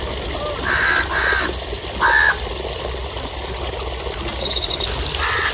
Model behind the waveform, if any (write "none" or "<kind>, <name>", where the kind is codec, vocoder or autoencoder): none